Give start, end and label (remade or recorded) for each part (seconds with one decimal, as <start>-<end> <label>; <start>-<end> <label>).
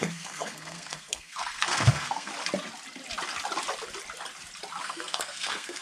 0.0-2.3 remade; 2.3-4.8 recorded; 4.8-5.8 remade